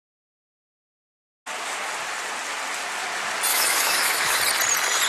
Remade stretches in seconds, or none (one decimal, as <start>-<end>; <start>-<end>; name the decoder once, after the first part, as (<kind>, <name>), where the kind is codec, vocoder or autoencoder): 3.5-4.4 (autoencoder, DAC-VAE)

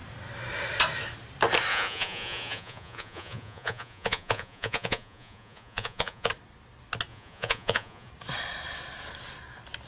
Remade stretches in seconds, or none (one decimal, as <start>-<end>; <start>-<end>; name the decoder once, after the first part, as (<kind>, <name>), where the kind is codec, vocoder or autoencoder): 1.7-6.3 (vocoder, Vocos); 7.1-8.1

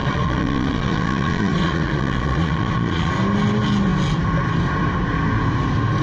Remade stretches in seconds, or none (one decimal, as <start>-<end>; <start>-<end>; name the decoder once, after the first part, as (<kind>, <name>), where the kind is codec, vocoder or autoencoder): 0.0-3.1 (vocoder, Vocos)

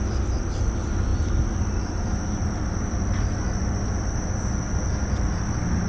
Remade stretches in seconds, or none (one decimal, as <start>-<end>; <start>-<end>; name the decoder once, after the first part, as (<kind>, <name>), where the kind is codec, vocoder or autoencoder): none

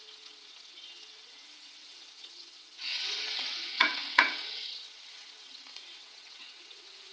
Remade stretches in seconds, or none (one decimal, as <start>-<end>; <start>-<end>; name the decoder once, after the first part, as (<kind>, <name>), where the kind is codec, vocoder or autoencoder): 0.0-7.1 (vocoder, WaveNeXt)

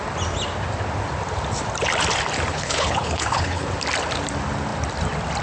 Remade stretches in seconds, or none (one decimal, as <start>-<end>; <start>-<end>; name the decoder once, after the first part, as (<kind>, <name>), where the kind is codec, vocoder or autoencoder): 2.5-3.7 (codec, HILCodec)

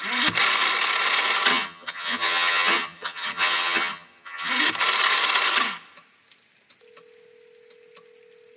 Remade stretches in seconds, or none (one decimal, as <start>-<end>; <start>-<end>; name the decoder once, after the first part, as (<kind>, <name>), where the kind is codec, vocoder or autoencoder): 1.5-4.5 (vocoder, HiFi-GAN)